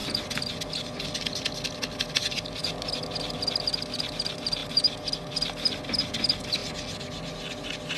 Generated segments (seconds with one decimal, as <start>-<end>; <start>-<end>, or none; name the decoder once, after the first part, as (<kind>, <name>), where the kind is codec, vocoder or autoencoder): none